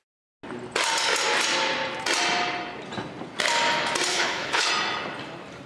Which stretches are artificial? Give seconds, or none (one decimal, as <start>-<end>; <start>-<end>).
4.1-4.7